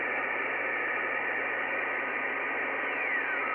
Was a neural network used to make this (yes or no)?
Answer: no